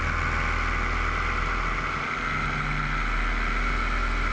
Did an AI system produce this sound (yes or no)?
no